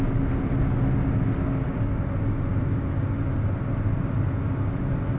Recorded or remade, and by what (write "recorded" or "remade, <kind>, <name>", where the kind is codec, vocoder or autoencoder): recorded